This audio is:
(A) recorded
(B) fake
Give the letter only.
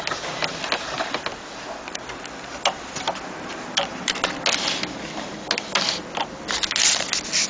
A